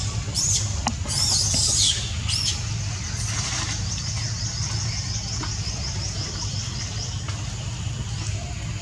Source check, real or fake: real